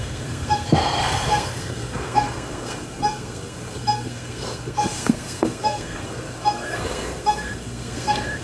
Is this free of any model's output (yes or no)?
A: no